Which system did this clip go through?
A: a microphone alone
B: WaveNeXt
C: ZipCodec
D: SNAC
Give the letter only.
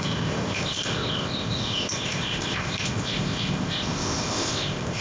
C